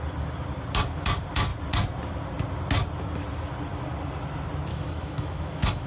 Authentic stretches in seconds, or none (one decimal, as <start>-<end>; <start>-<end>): 0.0-4.7

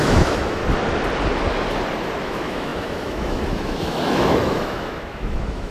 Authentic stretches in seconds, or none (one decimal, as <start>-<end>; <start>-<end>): 0.6-2.2

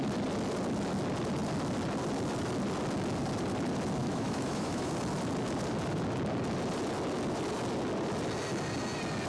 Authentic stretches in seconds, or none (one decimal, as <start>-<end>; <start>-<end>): 0.0-4.0; 4.9-9.3

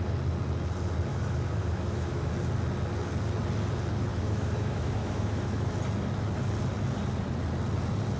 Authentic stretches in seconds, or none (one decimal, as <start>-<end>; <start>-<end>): 0.0-1.1; 2.3-4.1; 5.7-8.2

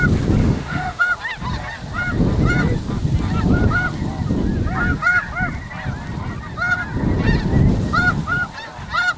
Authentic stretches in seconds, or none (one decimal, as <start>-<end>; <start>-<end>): 0.0-0.4; 1.0-9.2

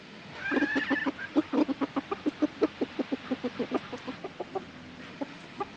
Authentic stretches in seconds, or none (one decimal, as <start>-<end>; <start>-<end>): 0.4-1.2; 1.6-5.1

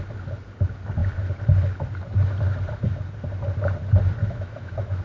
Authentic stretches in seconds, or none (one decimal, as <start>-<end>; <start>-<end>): 0.0-4.2